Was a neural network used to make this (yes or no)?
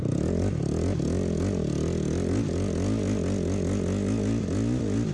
no